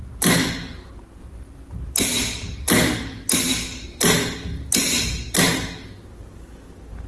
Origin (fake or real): real